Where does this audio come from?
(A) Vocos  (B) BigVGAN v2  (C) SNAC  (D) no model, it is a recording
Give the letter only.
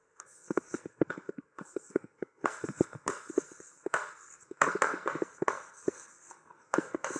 C